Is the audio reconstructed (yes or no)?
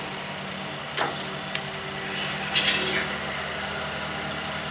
no